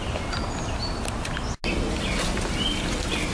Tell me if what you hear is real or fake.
real